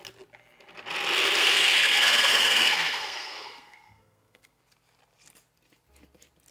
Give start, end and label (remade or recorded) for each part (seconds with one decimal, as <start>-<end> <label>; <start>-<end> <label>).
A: 0.0-1.4 recorded; 1.4-4.6 remade; 4.6-6.5 recorded